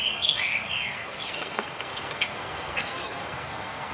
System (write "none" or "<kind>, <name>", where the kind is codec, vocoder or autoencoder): codec, SNAC